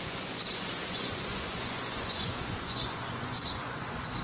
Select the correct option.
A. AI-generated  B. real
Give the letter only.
A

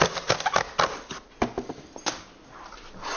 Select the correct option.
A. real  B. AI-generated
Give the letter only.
A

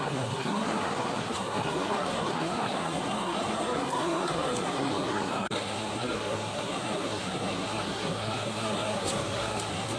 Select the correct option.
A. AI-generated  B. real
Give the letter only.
A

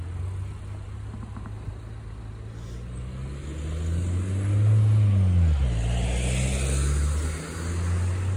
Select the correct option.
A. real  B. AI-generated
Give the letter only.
A